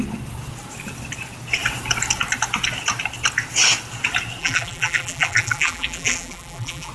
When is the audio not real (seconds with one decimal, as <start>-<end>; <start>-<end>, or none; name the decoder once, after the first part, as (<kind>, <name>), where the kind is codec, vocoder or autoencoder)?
4.4-6.9 (vocoder, BigVGAN v2)